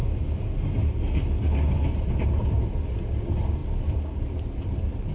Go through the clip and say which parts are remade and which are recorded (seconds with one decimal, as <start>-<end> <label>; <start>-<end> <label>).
0.0-5.1 recorded